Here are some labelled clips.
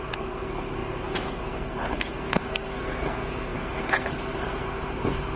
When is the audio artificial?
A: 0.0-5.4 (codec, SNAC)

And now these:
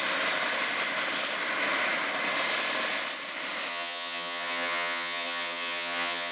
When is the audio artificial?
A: 3.7-6.3 (vocoder, HiFi-GAN)

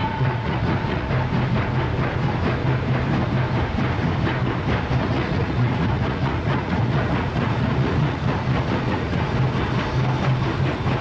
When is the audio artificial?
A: 0.0-1.1 (vocoder, Vocos); 5.0-9.3

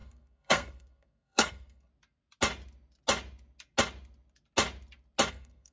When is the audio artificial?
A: 0.0-1.9 (codec, SNAC); 5.3-5.7